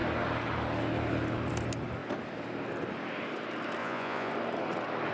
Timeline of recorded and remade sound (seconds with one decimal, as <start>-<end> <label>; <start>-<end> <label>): 0.0-3.8 recorded; 3.8-4.3 remade; 4.3-5.1 recorded